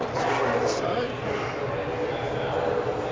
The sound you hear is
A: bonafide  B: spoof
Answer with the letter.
A